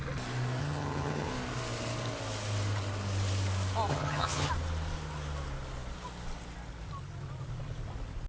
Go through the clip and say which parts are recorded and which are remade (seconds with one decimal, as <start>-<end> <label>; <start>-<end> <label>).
0.0-0.6 recorded; 0.6-1.3 remade; 1.3-3.9 recorded; 3.9-4.5 remade; 4.5-8.3 recorded